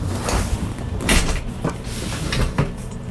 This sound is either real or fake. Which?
fake